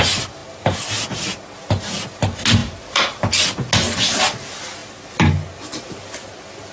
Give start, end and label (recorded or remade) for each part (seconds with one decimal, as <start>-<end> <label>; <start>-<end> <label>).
0.0-2.6 recorded; 2.6-3.3 remade; 3.3-6.7 recorded